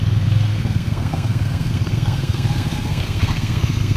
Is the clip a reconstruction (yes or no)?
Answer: yes